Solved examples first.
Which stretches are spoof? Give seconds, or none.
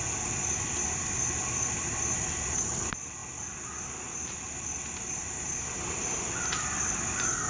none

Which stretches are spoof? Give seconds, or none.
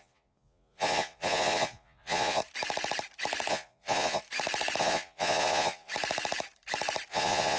0.0-2.4 (vocoder, Vocos); 3.5-4.2; 4.8-5.9; 7.1-7.6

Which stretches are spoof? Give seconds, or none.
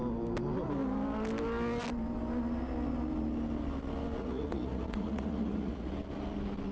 4.2-5.9 (vocoder, Vocos)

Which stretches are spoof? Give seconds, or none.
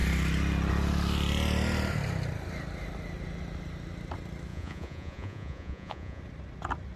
4.5-6.2 (vocoder, Vocos)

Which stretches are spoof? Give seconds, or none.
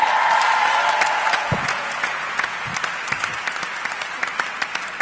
1.1-2.7 (vocoder, Vocos)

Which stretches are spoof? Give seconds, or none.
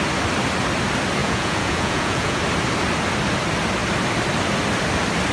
1.2-2.4 (vocoder, Vocos)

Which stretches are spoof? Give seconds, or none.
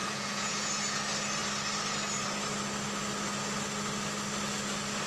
0.0-0.8 (vocoder, Vocos)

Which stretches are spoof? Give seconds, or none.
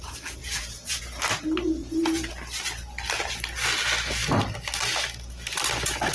0.4-1.0 (vocoder, Vocos); 1.8-2.3